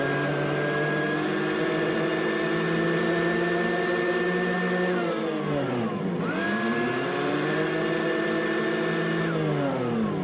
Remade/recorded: recorded